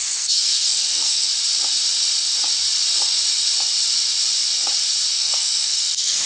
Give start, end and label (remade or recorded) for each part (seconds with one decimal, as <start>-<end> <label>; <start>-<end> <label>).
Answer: 0.0-1.3 remade; 1.3-5.1 recorded; 5.1-6.3 remade